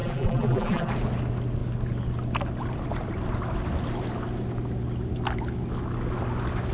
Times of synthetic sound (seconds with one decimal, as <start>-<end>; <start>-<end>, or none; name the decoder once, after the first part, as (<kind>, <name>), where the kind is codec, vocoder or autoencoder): 0.0-0.9 (vocoder, BigVGAN v2)